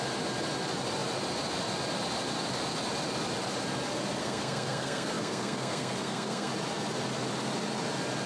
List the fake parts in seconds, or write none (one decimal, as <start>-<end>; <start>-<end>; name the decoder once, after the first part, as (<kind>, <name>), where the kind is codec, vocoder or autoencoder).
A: 4.2-6.5 (codec, SNAC)